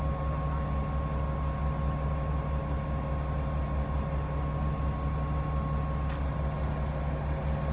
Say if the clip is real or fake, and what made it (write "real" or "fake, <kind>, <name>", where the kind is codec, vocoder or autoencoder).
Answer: real